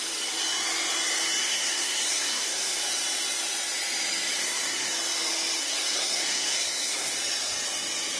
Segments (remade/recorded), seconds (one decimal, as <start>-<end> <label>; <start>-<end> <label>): 0.0-1.4 recorded; 1.4-2.8 remade; 2.8-4.4 recorded; 4.4-4.9 remade; 4.9-5.6 recorded; 5.6-7.1 remade; 7.1-8.2 recorded